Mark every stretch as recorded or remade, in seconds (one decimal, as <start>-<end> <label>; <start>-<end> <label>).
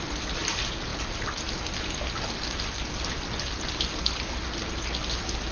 0.0-5.5 recorded